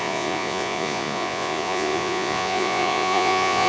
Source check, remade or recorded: remade